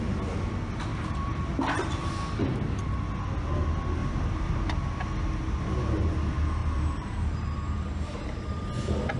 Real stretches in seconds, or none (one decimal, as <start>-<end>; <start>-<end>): 0.0-0.9; 2.1-4.0; 4.7-6.6; 8.5-9.2